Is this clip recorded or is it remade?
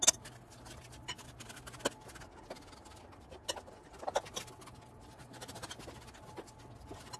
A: recorded